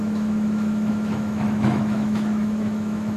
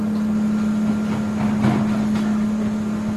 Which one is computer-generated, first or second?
first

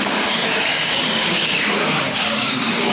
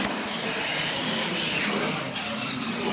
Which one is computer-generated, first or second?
first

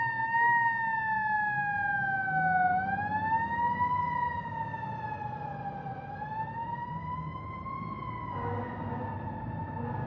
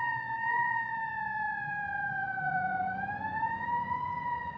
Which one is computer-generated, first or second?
second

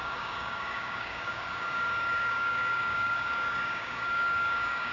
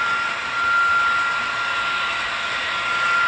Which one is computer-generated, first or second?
first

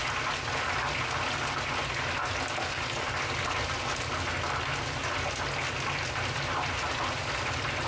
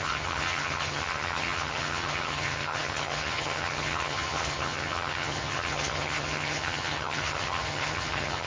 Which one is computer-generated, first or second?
second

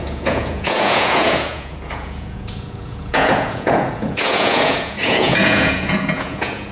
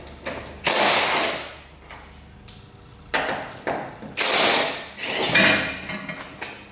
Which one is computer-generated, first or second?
first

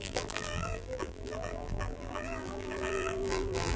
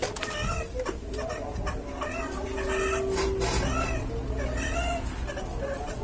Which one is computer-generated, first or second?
first